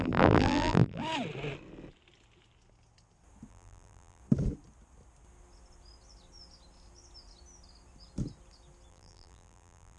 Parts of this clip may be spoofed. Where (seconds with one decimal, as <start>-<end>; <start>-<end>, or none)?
0.0-1.0; 3.5-4.2; 8.9-10.0